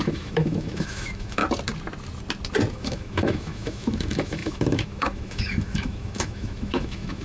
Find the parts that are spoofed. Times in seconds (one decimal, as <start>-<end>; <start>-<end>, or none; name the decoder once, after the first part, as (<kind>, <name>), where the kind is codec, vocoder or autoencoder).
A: 0.0-1.4 (autoencoder, DAC-VAE); 2.7-7.2